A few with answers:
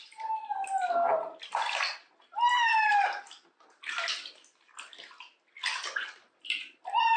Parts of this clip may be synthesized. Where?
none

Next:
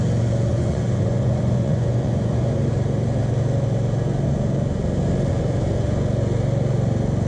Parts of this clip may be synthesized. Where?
0.5-2.5 (vocoder, Vocos)

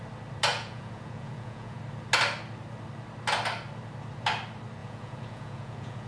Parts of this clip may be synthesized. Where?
0.5-1.8 (vocoder, Vocos); 4.8-6.1

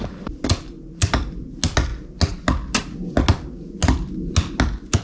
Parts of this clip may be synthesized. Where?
none

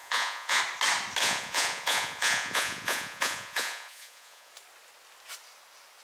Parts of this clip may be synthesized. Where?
0.0-0.6 (vocoder, Vocos); 1.2-4.5

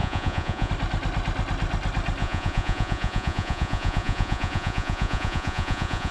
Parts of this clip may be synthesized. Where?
0.0-0.7 (vocoder, Vocos); 2.2-6.1

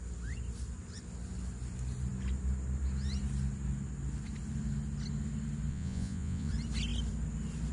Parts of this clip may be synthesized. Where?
5.7-6.5 (vocoder, Vocos)